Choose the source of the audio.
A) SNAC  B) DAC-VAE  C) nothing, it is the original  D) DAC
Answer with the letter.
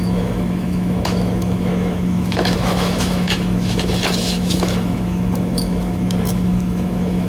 B